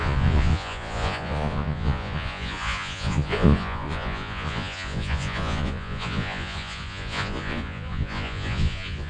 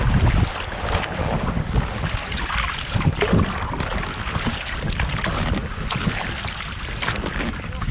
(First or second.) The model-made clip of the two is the first